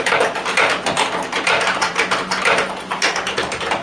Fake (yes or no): no